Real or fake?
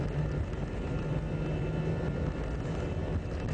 real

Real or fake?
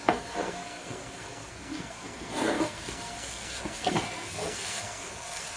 fake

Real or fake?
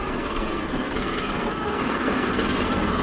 fake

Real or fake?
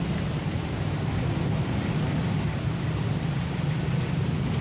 real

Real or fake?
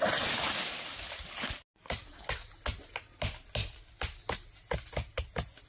real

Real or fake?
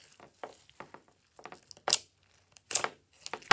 real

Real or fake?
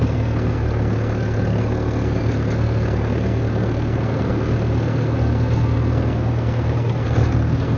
fake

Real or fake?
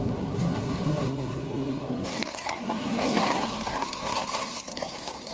fake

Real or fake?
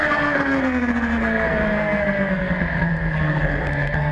fake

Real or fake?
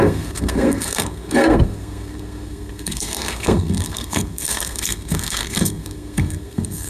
fake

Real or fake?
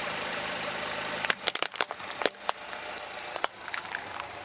real